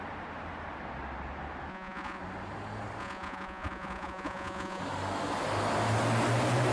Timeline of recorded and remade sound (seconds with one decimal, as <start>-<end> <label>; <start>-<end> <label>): 0.0-1.7 recorded; 1.7-2.2 remade; 2.2-3.0 recorded; 3.0-4.8 remade; 4.8-6.7 recorded